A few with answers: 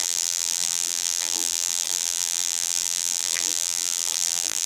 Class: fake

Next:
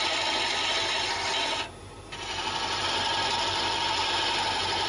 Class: real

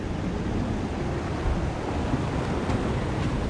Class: real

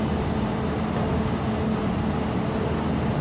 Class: real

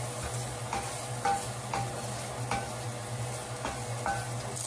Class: real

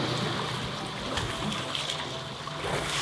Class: real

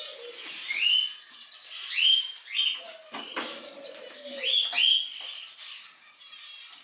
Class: real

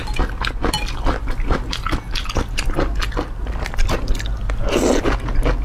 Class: real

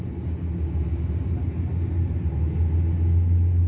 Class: real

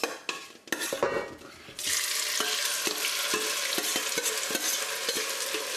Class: real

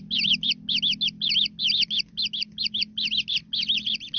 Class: real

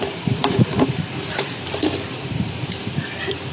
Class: fake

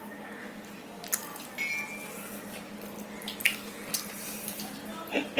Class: real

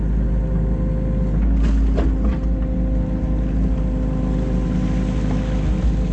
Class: real